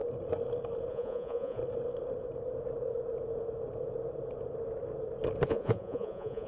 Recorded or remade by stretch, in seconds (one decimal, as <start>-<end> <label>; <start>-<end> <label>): 0.0-0.9 recorded; 0.9-1.6 remade; 1.6-5.5 recorded; 5.5-6.5 remade